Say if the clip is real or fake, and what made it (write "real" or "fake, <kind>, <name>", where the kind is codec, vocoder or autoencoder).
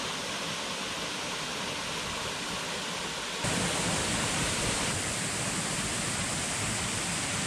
real